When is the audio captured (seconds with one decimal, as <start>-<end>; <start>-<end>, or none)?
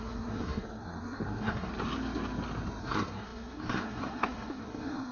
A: 1.7-2.8